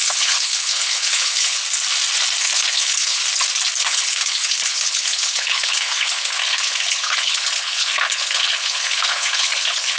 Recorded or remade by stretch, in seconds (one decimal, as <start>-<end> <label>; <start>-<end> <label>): 0.0-1.6 remade; 1.6-2.4 recorded; 2.4-3.2 remade; 3.2-3.8 recorded; 3.8-10.0 remade